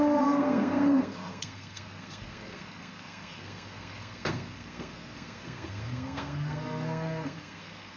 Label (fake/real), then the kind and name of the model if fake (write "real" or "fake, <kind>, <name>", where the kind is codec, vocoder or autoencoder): fake, codec, SNAC